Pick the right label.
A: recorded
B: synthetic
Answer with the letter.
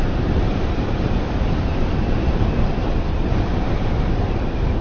B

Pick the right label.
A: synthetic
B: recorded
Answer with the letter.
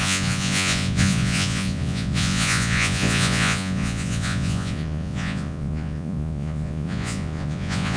A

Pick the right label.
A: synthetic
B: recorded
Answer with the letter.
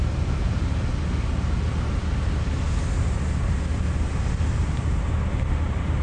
B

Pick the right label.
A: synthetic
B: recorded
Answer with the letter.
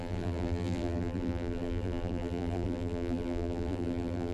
A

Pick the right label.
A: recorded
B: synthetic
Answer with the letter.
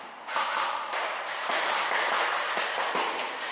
A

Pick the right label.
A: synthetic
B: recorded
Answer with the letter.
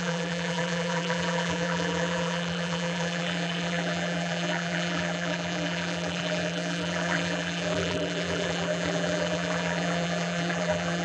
A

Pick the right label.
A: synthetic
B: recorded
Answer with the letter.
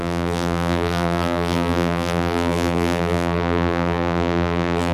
A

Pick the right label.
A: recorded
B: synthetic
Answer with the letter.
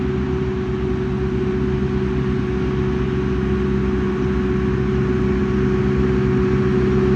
A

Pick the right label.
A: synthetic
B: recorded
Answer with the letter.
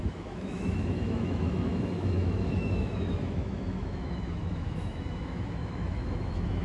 A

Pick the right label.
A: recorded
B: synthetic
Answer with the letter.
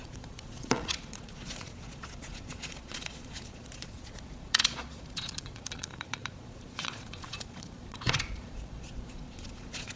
B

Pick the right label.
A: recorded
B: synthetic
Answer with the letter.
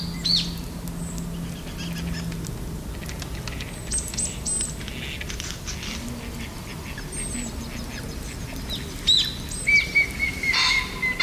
A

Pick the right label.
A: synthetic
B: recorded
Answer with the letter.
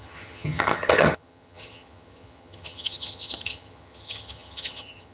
A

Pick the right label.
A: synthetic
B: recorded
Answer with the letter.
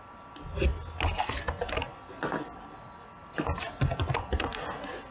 B